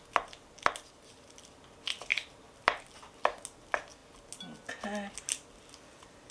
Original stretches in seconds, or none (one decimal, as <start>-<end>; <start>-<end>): 0.0-6.3